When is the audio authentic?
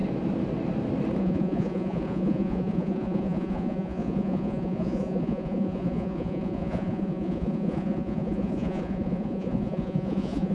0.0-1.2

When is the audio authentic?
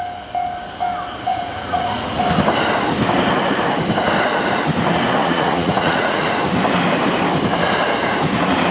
0.0-1.3; 2.2-5.2; 6.3-8.7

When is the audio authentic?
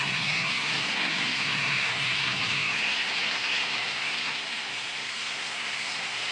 none